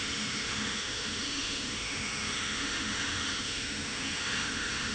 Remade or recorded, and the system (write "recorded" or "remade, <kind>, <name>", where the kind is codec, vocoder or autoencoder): remade, autoencoder, DAC-VAE